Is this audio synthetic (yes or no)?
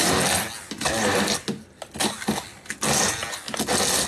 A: no